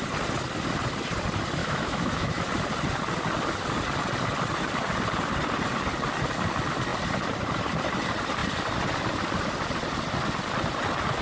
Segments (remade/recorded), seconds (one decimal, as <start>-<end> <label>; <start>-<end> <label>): 0.0-1.6 recorded; 1.6-2.4 remade; 2.4-11.2 recorded